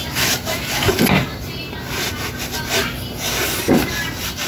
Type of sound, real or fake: real